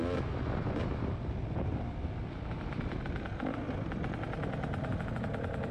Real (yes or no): yes